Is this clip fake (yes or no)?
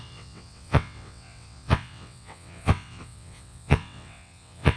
yes